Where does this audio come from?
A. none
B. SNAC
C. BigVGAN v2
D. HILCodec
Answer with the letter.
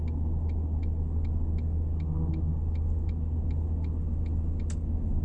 A